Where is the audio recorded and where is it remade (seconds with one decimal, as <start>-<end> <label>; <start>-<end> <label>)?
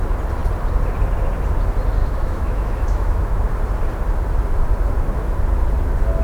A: 0.0-2.0 recorded; 2.0-3.4 remade; 3.4-6.2 recorded